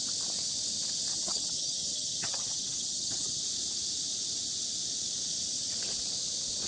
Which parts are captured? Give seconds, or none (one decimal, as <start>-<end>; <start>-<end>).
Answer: 0.0-1.1; 3.4-6.7